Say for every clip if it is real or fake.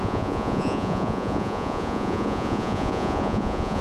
fake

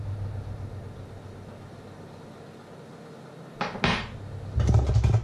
real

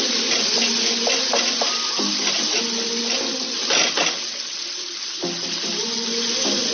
real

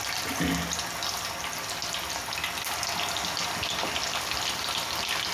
real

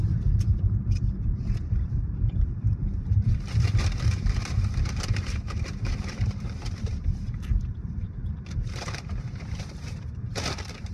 fake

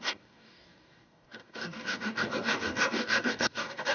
fake